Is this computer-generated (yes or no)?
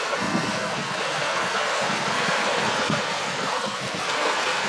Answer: yes